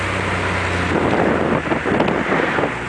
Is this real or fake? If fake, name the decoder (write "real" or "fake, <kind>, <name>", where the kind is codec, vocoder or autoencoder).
real